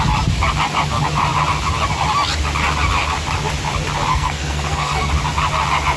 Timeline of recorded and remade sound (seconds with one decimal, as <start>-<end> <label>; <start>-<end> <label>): 0.0-4.1 recorded; 4.1-5.1 remade; 5.1-6.0 recorded